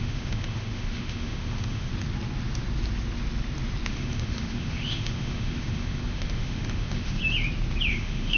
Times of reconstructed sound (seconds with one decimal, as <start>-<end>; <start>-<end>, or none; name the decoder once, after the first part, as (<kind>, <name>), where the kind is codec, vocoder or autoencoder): 0.0-1.9 (autoencoder, DAC-VAE); 3.9-7.2; 7.9-8.4